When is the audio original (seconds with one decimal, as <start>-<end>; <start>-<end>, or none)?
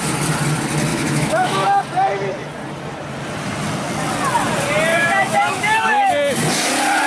0.0-0.9; 1.8-4.9; 6.1-7.1